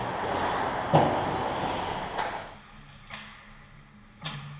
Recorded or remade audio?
recorded